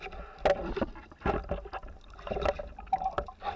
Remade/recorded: recorded